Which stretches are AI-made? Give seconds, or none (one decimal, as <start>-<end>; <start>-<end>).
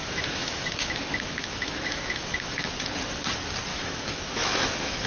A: 0.0-2.7; 3.7-5.1